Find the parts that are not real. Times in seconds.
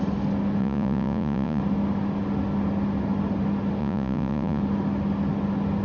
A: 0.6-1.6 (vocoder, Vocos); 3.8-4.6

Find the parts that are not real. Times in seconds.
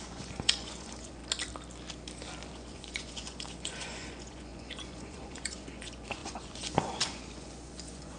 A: 0.0-1.2 (vocoder, Vocos); 2.5-8.2